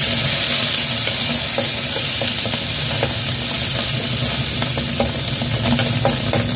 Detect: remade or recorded recorded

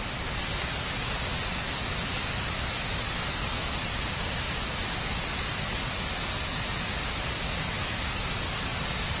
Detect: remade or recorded recorded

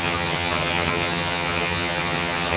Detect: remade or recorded remade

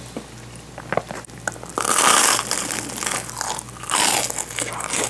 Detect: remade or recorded recorded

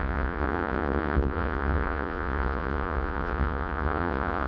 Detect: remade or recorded remade